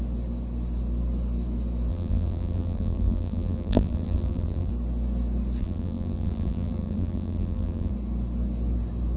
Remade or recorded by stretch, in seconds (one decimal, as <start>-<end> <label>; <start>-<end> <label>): 0.0-1.9 recorded; 1.9-4.7 remade; 4.7-5.6 recorded; 5.6-7.9 remade; 7.9-9.2 recorded